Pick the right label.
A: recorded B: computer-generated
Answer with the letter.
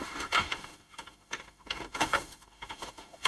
B